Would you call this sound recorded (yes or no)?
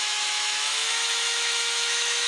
no